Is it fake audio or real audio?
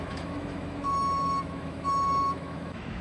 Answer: fake